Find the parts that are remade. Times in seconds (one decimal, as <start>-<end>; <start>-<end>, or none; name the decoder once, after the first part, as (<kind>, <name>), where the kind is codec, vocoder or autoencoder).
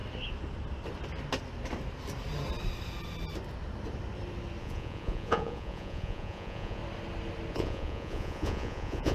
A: 4.6-6.8 (vocoder, Vocos); 7.5-9.1